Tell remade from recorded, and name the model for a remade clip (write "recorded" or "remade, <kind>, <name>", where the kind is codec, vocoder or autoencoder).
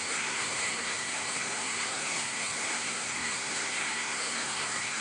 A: remade, codec, SNAC